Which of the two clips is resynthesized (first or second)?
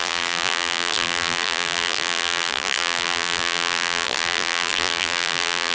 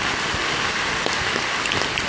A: first